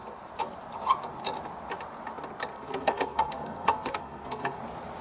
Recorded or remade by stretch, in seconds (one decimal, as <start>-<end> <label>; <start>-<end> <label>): 0.0-2.5 recorded; 2.5-4.6 remade; 4.6-5.0 recorded